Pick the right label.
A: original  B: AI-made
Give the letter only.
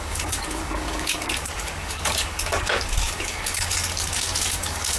B